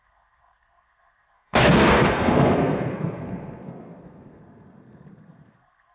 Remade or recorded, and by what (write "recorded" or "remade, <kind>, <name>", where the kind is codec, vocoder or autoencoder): remade, codec, SNAC